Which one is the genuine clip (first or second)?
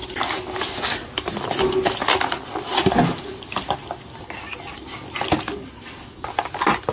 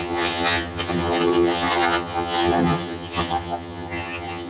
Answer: first